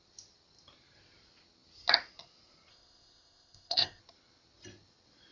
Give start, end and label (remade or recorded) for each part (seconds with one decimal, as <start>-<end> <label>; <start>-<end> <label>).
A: 0.0-2.7 recorded; 2.7-4.0 remade; 4.0-5.3 recorded